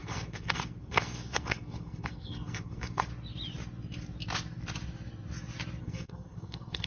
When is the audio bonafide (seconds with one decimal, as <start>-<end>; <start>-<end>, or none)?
3.1-5.8